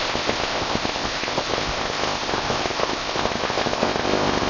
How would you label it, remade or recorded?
remade